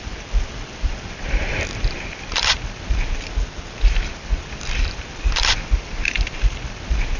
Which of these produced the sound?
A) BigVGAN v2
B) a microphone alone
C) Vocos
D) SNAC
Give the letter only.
A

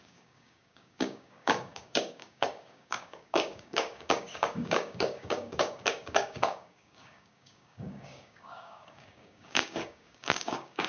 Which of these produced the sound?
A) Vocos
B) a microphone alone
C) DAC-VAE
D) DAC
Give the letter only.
D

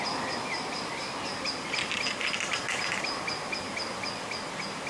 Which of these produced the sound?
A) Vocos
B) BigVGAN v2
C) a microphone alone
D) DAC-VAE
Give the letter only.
C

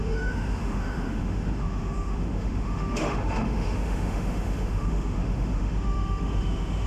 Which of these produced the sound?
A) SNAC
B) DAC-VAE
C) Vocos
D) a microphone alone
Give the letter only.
B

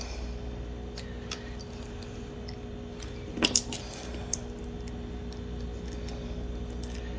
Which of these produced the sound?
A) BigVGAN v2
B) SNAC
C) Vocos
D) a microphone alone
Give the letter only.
D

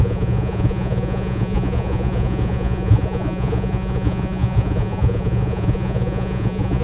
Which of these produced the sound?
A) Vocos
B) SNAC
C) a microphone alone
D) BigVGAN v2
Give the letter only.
A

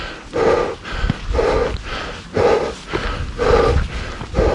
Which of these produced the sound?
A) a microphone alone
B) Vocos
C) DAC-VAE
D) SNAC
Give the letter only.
A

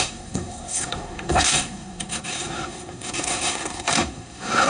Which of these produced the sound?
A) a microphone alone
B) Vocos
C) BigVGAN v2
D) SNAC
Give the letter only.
D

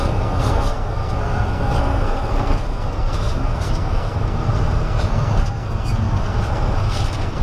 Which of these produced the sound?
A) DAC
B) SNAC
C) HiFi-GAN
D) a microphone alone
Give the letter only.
B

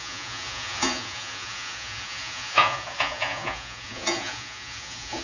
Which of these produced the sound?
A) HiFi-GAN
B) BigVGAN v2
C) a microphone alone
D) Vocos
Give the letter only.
D